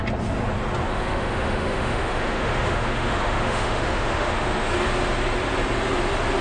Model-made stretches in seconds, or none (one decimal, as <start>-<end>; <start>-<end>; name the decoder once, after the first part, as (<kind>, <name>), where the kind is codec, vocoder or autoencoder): 0.9-4.7 (autoencoder, DAC-VAE)